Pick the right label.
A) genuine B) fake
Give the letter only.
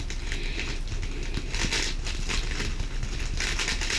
A